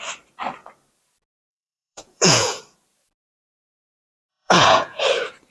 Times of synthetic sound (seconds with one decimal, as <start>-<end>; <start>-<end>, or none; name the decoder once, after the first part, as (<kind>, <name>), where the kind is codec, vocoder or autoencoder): 1.5-2.6 (vocoder, Vocos); 4.3-5.0